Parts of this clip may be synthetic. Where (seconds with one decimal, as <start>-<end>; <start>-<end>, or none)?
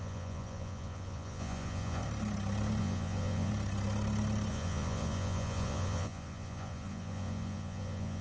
0.0-2.0; 2.8-3.5; 4.5-8.2